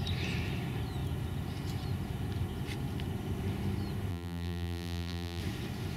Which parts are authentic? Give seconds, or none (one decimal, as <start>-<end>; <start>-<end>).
0.0-4.1; 5.4-6.0